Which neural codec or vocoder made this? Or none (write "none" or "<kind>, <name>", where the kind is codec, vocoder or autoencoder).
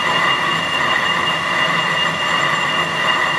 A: none